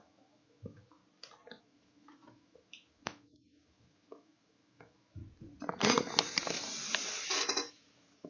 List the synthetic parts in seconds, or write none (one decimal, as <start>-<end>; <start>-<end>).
0.0-1.0; 1.6-5.2; 7.7-8.3